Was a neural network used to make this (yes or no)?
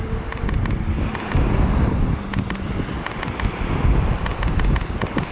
no